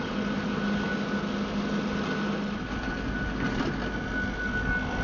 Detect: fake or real real